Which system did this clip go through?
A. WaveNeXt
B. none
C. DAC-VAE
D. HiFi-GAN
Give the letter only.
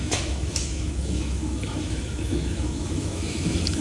C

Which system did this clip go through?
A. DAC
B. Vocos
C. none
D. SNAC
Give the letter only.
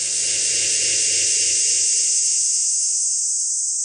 C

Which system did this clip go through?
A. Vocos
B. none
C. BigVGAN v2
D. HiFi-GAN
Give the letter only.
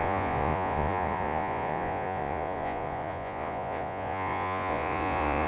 A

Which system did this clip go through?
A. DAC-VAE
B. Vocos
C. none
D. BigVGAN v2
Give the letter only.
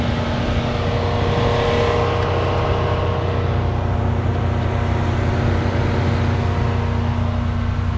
C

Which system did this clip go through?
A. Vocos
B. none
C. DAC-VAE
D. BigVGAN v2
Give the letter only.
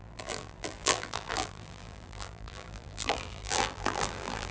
D